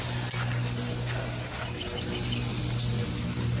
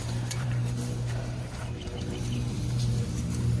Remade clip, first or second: second